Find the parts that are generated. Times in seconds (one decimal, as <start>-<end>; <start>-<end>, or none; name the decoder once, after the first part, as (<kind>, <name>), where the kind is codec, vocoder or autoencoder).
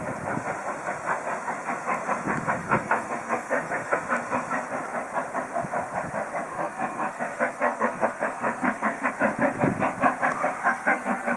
2.6-4.0 (codec, SNAC); 6.5-9.1; 10.6-11.4